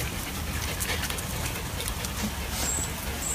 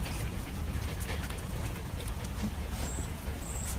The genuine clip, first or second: first